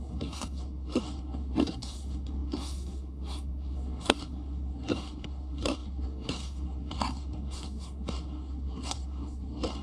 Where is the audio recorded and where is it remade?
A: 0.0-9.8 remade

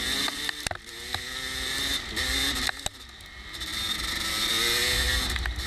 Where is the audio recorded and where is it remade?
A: 0.0-5.7 recorded

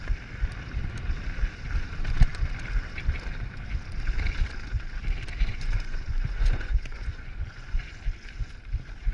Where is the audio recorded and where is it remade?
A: 0.0-5.5 recorded; 5.5-7.8 remade; 7.8-9.1 recorded

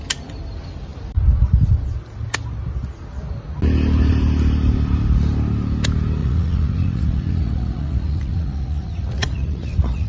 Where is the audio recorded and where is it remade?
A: 0.0-6.2 recorded; 6.2-10.1 remade

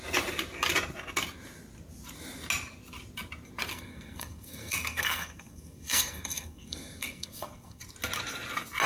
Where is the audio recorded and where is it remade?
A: 0.0-3.7 recorded; 3.7-7.8 remade; 7.8-8.9 recorded

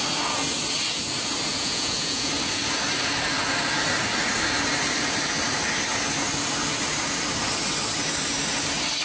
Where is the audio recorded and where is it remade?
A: 0.0-1.5 recorded; 1.5-2.3 remade; 2.3-9.0 recorded

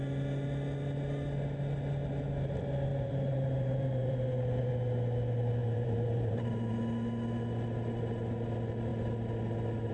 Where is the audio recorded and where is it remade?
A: 0.0-2.9 recorded; 2.9-4.7 remade; 4.7-5.6 recorded; 5.6-6.7 remade; 6.7-9.9 recorded